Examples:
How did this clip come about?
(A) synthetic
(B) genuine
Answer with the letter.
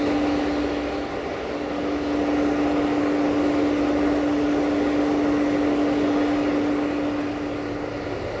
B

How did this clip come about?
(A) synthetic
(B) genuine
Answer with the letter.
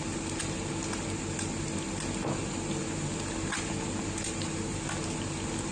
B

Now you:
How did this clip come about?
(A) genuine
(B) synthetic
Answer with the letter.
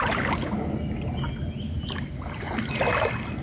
A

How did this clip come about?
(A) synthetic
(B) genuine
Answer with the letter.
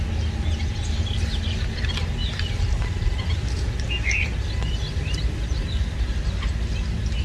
B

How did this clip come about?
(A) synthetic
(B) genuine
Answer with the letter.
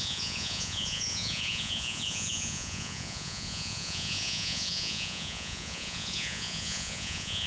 A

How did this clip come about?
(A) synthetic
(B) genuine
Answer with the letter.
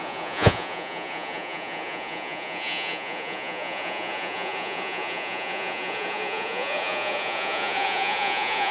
A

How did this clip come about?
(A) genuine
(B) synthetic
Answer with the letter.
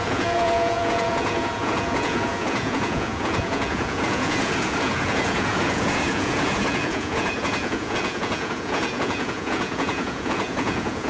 B